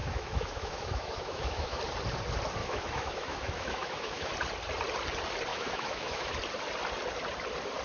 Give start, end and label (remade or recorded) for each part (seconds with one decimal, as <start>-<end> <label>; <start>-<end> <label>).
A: 0.0-1.8 remade; 1.8-2.6 recorded; 2.6-4.3 remade; 4.3-5.5 recorded; 5.5-6.3 remade; 6.3-7.8 recorded